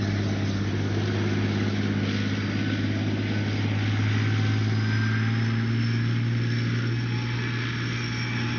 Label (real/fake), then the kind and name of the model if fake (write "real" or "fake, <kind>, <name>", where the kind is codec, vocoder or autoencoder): real